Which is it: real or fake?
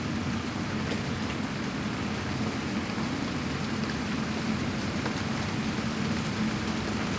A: real